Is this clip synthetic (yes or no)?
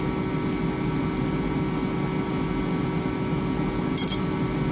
no